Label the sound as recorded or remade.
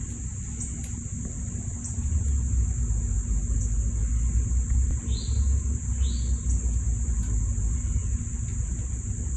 recorded